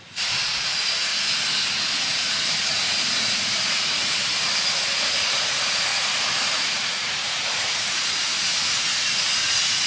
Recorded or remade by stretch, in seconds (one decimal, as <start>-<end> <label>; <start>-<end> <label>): 0.0-1.1 remade; 1.1-1.7 recorded; 1.7-4.3 remade; 4.3-4.9 recorded; 4.9-9.9 remade